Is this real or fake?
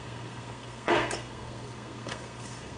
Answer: fake